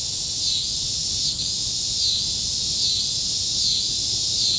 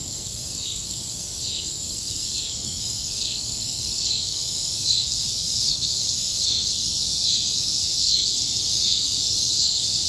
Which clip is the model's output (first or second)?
second